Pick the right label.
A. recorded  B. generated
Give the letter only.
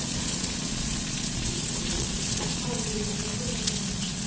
B